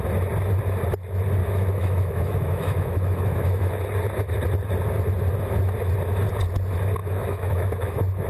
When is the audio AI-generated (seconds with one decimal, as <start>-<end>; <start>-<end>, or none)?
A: 1.4-3.8; 7.0-7.9